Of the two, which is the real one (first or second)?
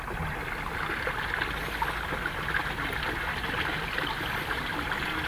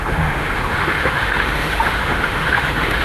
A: first